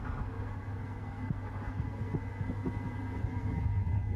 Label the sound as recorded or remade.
remade